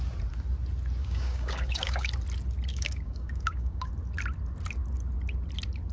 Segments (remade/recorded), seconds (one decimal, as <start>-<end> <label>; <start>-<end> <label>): 0.0-1.0 recorded; 1.0-2.1 remade; 2.1-2.7 recorded; 2.7-3.9 remade; 3.9-5.9 recorded